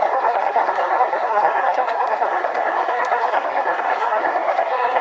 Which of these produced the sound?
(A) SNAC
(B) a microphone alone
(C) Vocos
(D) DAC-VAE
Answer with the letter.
A